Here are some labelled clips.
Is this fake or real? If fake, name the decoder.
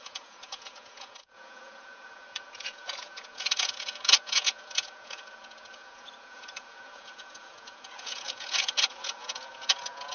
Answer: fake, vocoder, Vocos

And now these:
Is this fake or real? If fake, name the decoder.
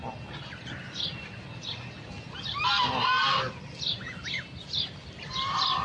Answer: real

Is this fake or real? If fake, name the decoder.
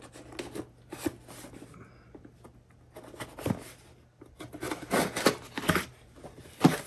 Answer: real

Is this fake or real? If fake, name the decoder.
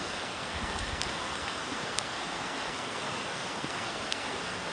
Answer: fake, codec, SNAC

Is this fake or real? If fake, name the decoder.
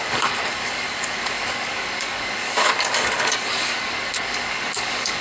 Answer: fake, codec, DAC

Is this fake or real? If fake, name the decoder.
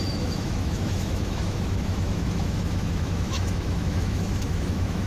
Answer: fake, autoencoder, DAC-VAE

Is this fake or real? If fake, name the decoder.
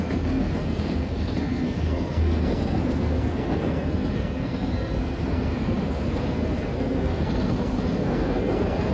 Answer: fake, codec, SNAC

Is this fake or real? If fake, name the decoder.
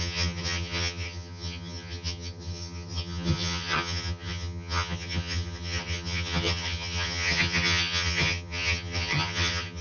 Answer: fake, vocoder, HiFi-GAN